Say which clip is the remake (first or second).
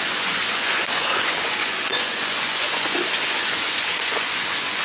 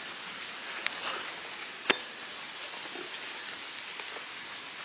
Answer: first